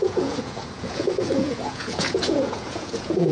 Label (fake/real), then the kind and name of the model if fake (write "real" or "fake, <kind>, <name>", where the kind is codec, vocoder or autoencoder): fake, vocoder, Vocos